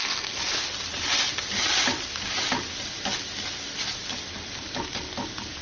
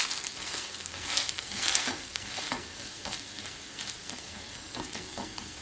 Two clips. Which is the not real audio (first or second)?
second